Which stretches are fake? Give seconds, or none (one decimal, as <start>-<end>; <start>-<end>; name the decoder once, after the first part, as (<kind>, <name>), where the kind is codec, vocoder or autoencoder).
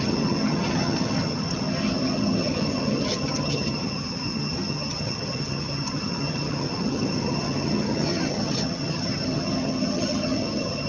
0.0-10.9 (vocoder, HiFi-GAN)